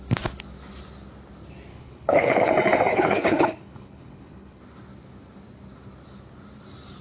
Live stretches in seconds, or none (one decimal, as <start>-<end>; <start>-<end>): 0.0-1.7; 2.5-2.9; 4.6-7.0